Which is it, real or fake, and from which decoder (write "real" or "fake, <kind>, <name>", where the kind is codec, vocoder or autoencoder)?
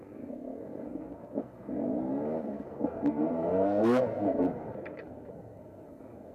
fake, codec, SNAC